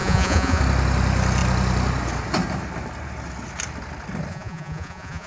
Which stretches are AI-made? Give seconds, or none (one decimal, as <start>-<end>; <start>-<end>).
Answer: 0.0-0.6; 4.3-5.3

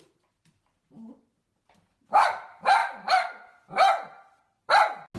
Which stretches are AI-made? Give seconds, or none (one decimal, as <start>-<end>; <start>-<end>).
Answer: none

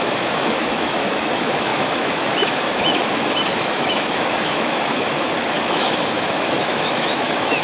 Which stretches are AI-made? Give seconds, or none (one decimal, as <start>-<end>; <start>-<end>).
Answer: 0.0-7.6

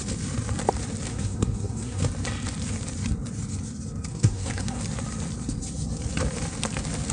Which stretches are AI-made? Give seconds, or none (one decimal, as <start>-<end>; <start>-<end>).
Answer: 1.1-2.0; 4.1-4.8

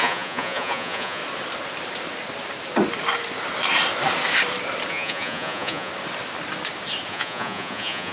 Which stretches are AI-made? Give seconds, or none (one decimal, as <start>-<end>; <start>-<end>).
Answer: 0.0-1.2; 4.9-5.9; 7.1-8.1